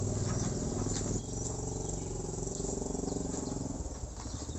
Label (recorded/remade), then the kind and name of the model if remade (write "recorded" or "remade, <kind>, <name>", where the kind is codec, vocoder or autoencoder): recorded